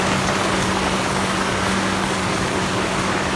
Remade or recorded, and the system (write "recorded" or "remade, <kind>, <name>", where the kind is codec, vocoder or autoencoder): remade, codec, DAC